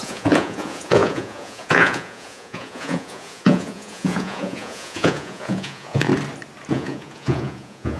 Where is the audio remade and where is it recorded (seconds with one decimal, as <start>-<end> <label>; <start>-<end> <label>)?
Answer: 0.0-6.1 remade; 6.1-6.7 recorded; 6.7-8.0 remade